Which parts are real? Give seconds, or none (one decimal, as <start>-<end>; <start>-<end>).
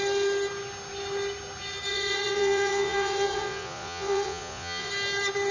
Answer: 0.0-1.9; 4.9-5.5